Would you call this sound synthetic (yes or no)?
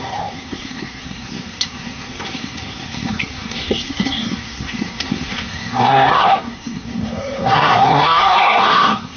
yes